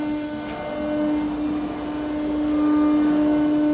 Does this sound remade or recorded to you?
recorded